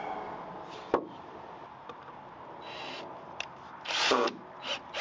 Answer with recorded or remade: recorded